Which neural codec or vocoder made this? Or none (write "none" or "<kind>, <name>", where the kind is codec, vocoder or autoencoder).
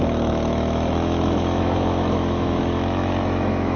autoencoder, DAC-VAE